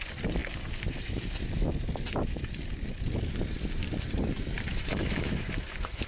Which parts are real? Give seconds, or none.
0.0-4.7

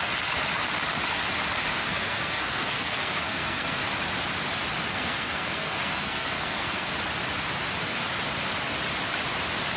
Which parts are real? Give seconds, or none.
0.0-1.7; 3.8-4.9; 6.9-9.8

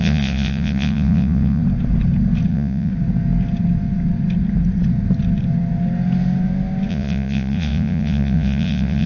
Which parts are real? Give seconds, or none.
1.6-2.5; 2.9-6.9